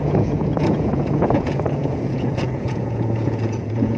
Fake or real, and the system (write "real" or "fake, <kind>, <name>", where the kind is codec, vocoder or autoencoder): fake, vocoder, Vocos